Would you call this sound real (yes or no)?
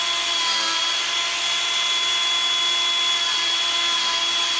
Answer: yes